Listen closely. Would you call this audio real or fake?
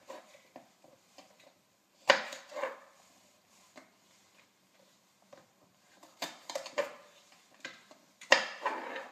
fake